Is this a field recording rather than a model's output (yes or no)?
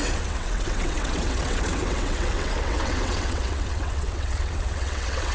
no